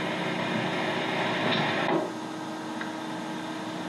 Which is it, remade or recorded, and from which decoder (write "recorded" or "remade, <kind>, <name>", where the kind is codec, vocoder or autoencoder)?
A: recorded